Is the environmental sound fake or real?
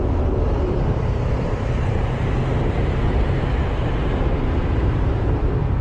fake